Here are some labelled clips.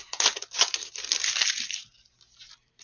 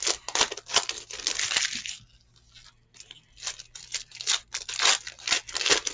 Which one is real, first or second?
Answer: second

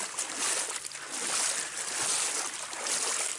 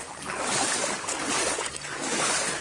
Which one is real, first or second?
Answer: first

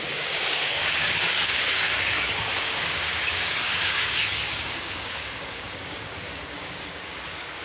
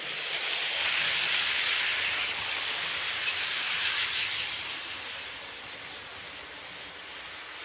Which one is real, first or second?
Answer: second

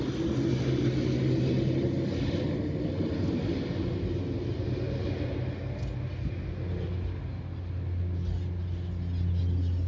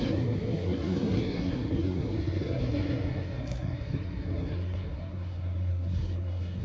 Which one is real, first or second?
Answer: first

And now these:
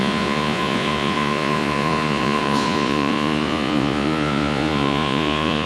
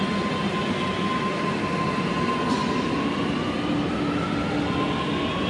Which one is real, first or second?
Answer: second